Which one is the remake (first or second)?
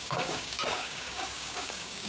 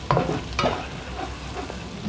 first